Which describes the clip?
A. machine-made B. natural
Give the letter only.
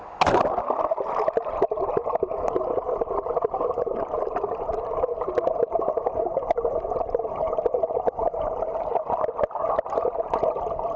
B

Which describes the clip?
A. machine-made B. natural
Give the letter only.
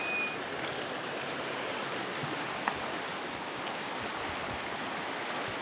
B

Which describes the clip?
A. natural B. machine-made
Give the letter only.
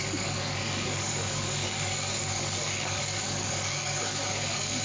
B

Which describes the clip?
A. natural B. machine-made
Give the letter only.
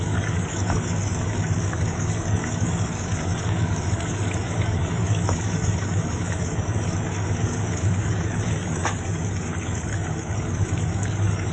B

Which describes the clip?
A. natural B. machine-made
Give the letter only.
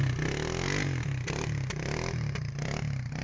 A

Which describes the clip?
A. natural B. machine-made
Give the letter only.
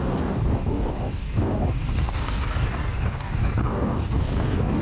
B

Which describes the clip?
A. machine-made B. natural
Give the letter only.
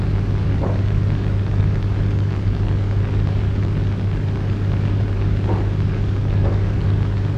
A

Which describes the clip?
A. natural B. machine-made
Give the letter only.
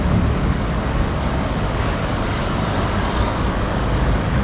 B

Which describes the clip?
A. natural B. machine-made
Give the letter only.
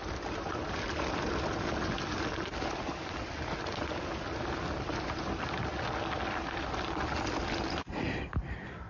A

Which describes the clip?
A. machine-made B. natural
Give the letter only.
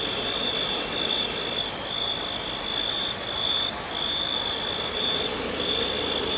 B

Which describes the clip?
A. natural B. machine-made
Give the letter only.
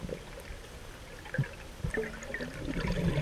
A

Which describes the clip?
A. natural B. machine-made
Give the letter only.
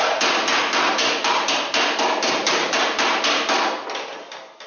A